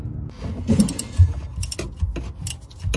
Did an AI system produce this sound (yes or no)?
no